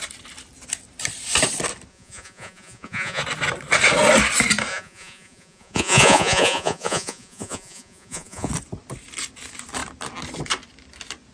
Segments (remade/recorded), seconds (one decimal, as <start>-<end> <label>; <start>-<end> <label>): 0.0-1.9 recorded; 1.9-3.2 remade; 3.2-4.7 recorded; 4.7-8.5 remade; 8.5-11.3 recorded